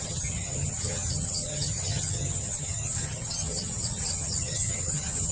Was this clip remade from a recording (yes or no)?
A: yes